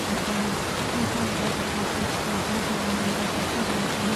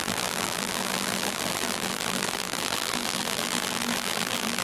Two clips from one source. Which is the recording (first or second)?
first